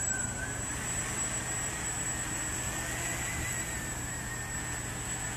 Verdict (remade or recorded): recorded